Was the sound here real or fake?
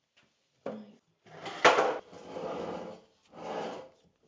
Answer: real